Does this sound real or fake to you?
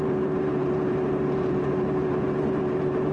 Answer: fake